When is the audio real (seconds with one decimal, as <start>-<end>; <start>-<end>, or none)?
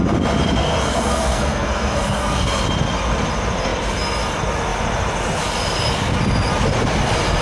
0.0-0.6; 2.6-7.4